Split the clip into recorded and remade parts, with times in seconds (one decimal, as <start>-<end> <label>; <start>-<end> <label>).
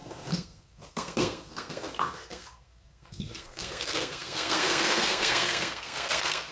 0.0-6.5 remade